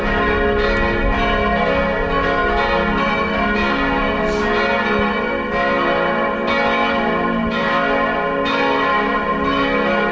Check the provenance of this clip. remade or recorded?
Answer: recorded